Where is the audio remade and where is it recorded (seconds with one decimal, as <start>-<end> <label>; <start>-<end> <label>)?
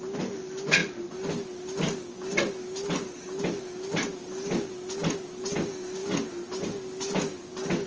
0.0-7.9 recorded